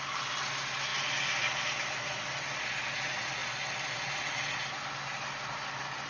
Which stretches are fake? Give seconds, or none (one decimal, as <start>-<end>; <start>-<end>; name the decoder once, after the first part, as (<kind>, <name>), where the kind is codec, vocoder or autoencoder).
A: none